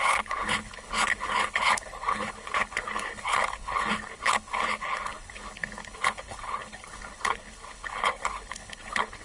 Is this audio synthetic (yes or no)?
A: yes